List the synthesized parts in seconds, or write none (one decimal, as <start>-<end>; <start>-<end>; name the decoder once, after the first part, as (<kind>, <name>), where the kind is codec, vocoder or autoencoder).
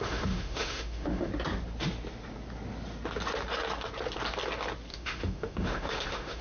0.0-1.3 (autoencoder, DAC-VAE); 4.9-6.4